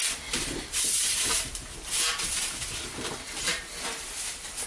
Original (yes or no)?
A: no